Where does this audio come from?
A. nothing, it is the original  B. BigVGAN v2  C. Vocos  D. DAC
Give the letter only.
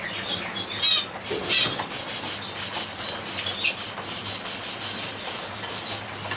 A